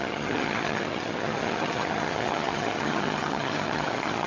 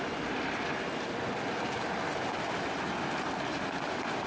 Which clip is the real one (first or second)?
second